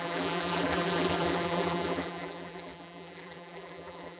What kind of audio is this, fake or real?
fake